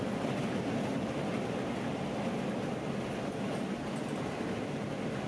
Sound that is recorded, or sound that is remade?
recorded